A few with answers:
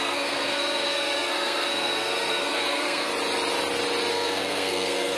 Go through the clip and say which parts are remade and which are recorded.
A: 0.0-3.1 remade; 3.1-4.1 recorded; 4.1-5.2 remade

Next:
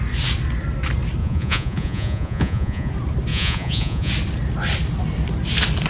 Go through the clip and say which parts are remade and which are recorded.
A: 0.0-1.2 recorded; 1.2-2.9 remade; 2.9-3.3 recorded; 3.3-4.1 remade; 4.1-5.9 recorded

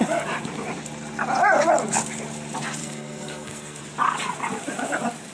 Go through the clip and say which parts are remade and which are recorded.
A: 0.0-2.8 recorded; 2.8-3.8 remade; 3.8-5.3 recorded

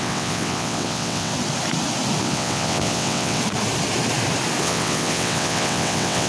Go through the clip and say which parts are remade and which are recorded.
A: 0.0-1.3 remade; 1.3-2.2 recorded; 2.2-3.4 remade; 3.4-4.6 recorded; 4.6-6.3 remade

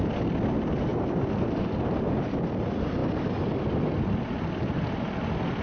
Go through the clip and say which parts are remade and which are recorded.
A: 0.0-0.9 recorded; 0.9-1.6 remade; 1.6-5.6 recorded

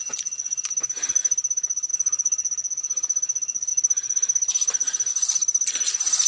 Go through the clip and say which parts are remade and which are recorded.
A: 0.0-6.3 recorded

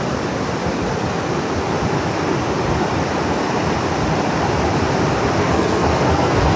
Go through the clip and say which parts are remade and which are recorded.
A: 0.0-5.4 recorded; 5.4-6.6 remade

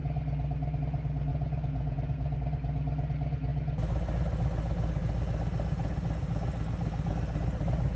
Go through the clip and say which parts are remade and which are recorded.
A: 0.0-1.3 recorded; 1.3-2.4 remade; 2.4-8.0 recorded